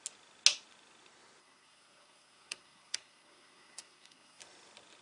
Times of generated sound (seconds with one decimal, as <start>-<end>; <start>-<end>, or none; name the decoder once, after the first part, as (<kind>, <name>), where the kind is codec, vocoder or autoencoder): 1.4-4.4 (codec, SNAC)